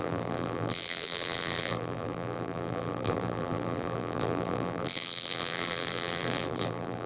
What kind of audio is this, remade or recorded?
remade